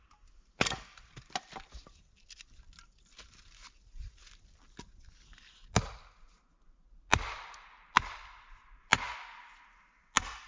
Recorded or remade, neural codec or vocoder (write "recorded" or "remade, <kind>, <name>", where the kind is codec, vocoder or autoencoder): recorded